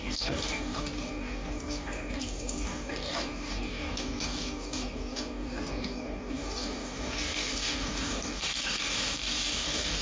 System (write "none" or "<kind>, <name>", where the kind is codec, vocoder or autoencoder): codec, DAC